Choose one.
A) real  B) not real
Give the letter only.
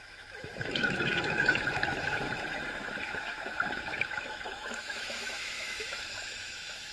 B